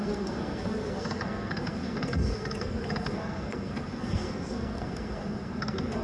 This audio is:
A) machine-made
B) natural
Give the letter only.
A